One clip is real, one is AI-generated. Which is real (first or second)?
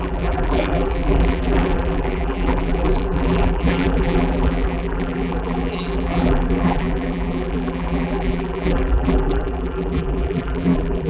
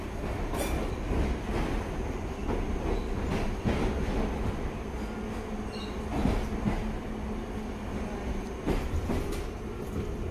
second